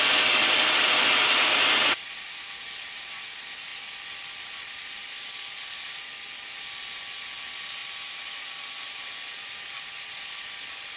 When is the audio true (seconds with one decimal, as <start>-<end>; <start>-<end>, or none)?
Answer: 0.0-11.0